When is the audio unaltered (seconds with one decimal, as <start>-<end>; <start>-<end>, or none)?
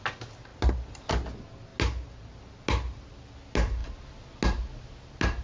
0.0-5.4